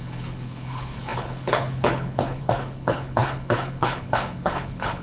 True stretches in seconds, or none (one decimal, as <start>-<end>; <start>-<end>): none